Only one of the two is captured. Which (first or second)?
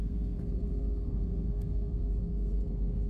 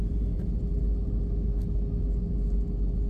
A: second